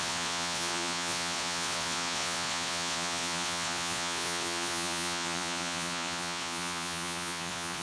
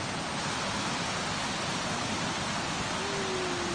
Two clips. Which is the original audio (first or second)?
second